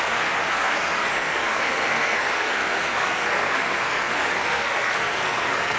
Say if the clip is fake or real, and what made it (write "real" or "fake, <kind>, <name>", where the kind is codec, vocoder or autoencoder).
fake, codec, SNAC